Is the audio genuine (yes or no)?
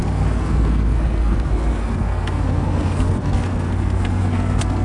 no